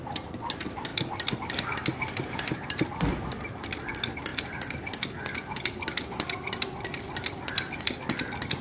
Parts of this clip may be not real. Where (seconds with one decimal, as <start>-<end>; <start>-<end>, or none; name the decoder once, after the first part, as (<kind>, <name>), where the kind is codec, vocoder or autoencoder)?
none

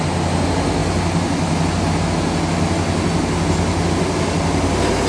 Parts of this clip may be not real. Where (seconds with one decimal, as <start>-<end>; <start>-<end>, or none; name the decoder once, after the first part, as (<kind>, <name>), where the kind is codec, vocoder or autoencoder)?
none